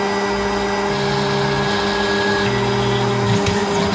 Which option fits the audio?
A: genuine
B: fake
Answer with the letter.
A